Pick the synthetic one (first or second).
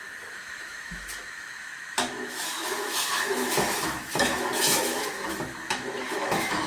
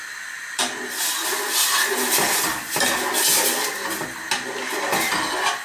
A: first